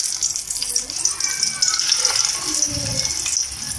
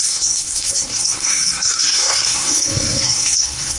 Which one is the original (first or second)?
first